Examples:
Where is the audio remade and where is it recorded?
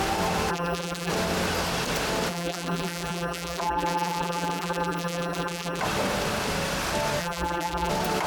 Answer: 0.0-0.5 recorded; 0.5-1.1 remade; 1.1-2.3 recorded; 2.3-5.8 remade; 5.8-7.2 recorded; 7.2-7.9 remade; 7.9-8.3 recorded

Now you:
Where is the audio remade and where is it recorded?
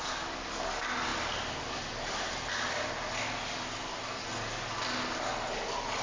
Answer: 0.0-6.0 recorded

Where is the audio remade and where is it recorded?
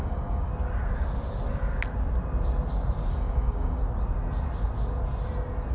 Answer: 0.0-0.5 remade; 0.5-3.1 recorded; 3.1-3.8 remade; 3.8-5.7 recorded